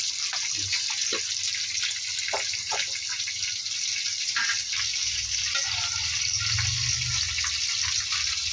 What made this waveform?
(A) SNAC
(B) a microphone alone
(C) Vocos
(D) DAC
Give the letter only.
B